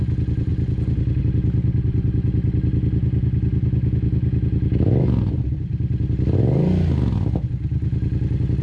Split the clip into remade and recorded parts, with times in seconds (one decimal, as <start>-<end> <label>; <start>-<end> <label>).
0.0-8.6 recorded